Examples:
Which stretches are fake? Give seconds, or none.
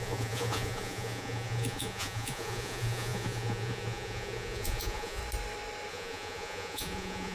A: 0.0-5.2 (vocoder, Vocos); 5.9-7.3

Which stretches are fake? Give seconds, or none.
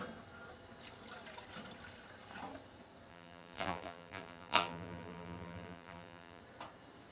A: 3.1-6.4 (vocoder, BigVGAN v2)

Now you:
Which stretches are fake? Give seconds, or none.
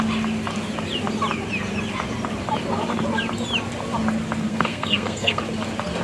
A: 4.5-5.4 (codec, SNAC)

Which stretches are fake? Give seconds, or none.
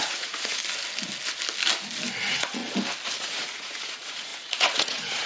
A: 0.0-0.6 (vocoder, Vocos); 2.2-2.6; 3.2-5.3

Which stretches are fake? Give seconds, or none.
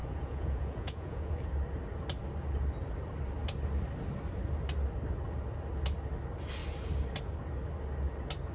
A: 0.0-1.5 (vocoder, Vocos)